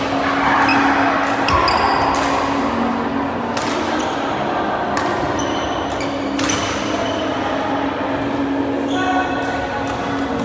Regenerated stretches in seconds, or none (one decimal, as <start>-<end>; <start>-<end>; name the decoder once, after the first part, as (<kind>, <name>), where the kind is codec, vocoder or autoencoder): none

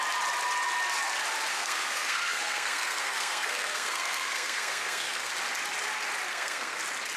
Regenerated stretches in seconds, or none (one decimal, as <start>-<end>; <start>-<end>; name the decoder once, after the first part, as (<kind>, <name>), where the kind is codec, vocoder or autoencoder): 1.5-5.3 (codec, SNAC); 6.3-6.8